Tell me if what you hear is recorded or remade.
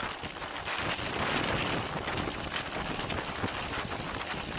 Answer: recorded